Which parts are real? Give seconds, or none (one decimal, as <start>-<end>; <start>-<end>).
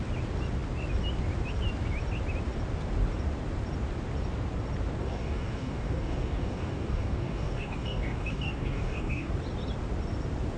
0.0-5.0; 9.3-10.6